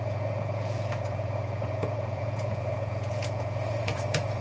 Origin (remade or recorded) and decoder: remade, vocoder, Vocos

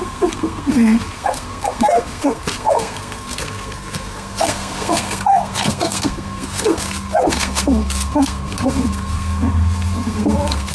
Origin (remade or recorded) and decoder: remade, codec, SNAC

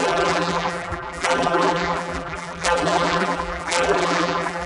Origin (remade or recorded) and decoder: remade, vocoder, BigVGAN v2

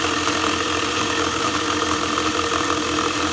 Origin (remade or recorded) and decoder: recorded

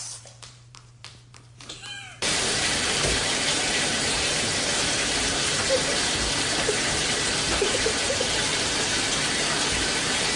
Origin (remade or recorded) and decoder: remade, vocoder, BigVGAN v2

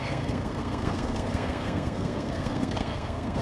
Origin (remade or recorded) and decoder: remade, codec, SNAC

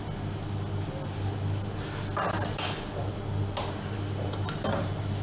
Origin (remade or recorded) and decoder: recorded